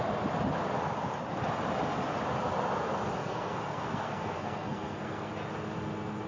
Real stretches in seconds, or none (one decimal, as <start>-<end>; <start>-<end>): 0.0-3.2; 5.3-6.3